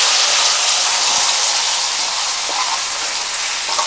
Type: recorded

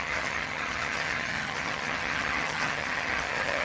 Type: remade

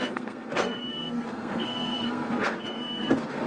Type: remade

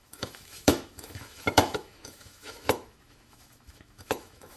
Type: remade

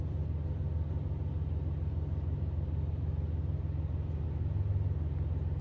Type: recorded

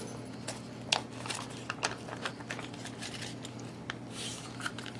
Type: recorded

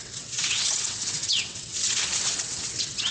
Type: remade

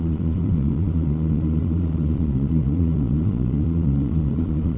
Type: remade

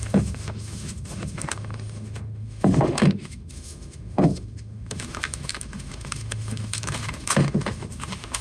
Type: remade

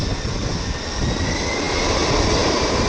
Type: recorded